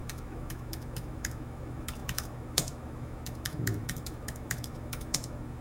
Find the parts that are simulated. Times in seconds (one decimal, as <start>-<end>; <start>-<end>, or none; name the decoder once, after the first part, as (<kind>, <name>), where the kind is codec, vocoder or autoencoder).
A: 0.0-5.6 (autoencoder, DAC-VAE)